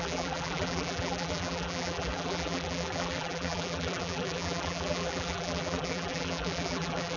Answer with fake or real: fake